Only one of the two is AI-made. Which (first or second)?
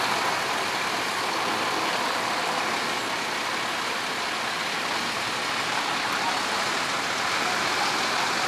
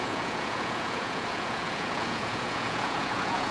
second